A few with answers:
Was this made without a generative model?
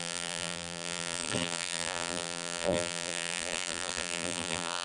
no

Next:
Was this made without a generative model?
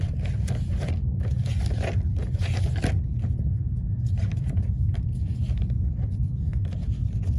yes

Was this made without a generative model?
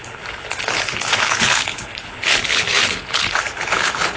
no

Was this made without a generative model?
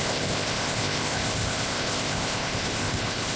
no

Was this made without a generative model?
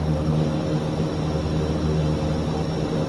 yes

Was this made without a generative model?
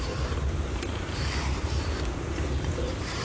no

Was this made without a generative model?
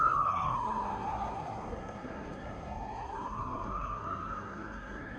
no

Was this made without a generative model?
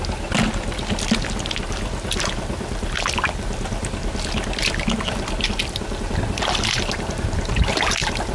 yes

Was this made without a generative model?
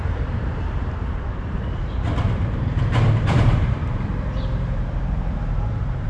no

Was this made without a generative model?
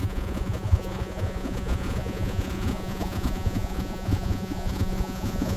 no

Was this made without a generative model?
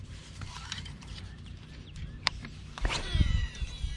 no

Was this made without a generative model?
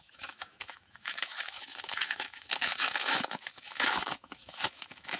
no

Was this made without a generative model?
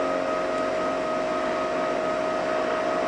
yes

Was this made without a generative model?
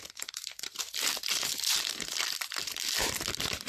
no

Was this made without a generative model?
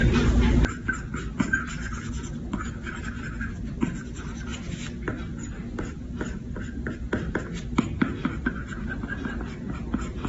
yes